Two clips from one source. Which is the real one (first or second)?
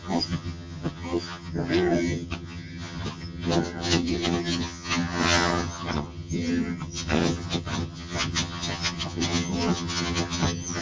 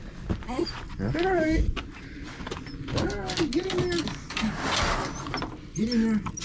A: second